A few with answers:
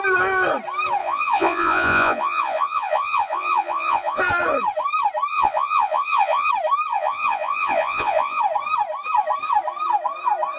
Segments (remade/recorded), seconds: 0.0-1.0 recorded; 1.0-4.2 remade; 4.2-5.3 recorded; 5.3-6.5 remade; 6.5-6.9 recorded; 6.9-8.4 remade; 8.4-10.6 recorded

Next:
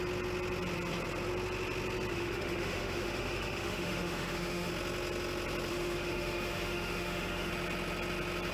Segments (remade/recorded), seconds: 0.0-2.1 recorded; 2.1-4.7 remade; 4.7-5.7 recorded; 5.7-7.5 remade; 7.5-8.5 recorded

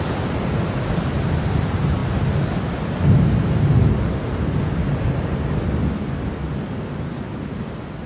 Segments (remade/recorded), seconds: 0.0-8.1 recorded